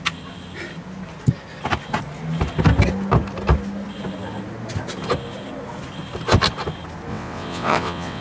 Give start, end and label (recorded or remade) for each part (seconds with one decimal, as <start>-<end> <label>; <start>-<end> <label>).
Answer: 0.0-7.1 recorded; 7.1-8.2 remade